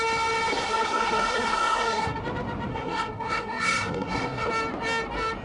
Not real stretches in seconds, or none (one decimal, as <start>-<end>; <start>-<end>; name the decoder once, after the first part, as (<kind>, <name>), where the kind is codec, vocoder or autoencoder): 0.5-2.2 (codec, SNAC); 2.7-4.5